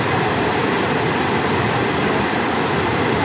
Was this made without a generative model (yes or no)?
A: no